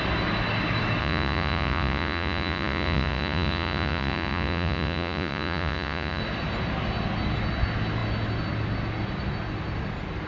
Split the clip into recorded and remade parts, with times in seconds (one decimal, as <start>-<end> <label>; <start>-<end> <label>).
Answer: 0.0-1.0 recorded; 1.0-6.2 remade; 6.2-10.3 recorded

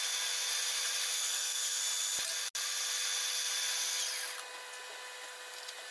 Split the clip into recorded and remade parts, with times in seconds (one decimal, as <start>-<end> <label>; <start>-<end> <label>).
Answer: 0.0-1.1 recorded; 1.1-1.8 remade; 1.8-5.9 recorded

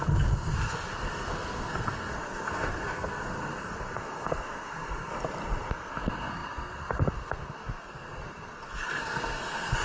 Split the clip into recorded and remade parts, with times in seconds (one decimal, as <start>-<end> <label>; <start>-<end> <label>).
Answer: 0.0-5.1 remade; 5.1-5.7 recorded; 5.7-9.8 remade

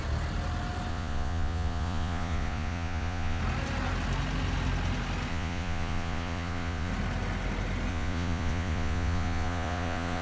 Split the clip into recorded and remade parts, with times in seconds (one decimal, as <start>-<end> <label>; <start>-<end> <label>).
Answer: 0.0-0.9 recorded; 0.9-3.4 remade; 3.4-5.3 recorded; 5.3-6.9 remade; 6.9-7.9 recorded; 7.9-10.2 remade

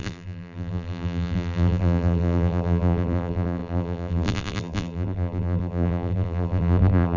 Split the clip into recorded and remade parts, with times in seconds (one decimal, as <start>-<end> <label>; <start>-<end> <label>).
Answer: 0.0-7.2 remade

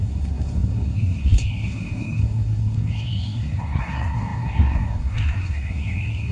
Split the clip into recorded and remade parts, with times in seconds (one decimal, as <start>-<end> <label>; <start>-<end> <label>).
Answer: 0.0-6.3 remade

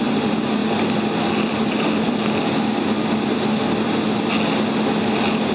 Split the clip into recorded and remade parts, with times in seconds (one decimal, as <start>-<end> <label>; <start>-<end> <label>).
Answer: 0.0-5.5 recorded